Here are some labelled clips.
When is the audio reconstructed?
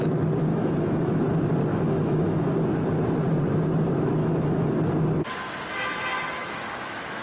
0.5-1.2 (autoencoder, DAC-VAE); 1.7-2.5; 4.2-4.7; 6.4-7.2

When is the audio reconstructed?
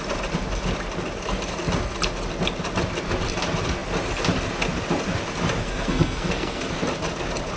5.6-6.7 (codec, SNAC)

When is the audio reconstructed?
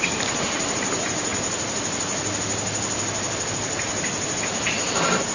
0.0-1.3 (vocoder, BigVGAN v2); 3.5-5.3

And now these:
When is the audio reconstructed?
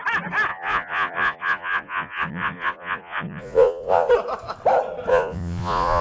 0.5-4.1 (vocoder, Vocos); 5.1-6.0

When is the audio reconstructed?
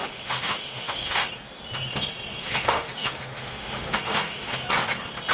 0.0-1.3 (autoencoder, DAC-VAE); 2.4-4.5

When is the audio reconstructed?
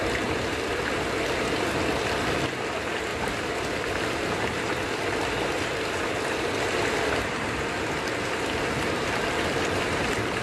3.1-4.1 (vocoder, BigVGAN v2)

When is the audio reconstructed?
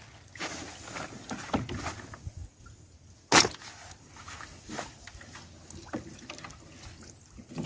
none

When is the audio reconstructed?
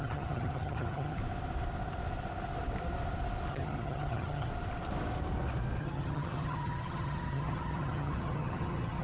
0.0-1.2 (vocoder, HiFi-GAN); 3.5-4.5; 5.8-9.0